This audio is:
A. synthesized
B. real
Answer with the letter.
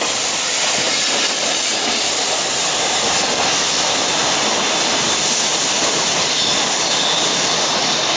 B